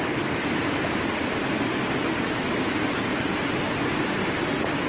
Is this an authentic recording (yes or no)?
yes